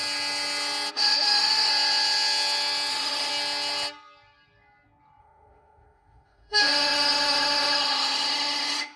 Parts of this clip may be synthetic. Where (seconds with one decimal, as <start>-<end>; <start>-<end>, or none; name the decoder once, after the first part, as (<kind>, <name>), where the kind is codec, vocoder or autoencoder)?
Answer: 0.9-1.7 (autoencoder, DAC-VAE); 2.9-3.3; 5.2-9.0